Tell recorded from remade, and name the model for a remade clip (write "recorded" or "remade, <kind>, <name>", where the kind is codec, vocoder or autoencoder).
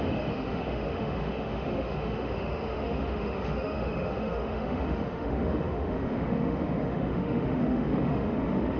remade, autoencoder, DAC-VAE